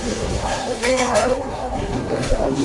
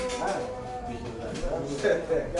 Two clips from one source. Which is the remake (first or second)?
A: first